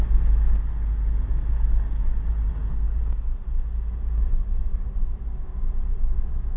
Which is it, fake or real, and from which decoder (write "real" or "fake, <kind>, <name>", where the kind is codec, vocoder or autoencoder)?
real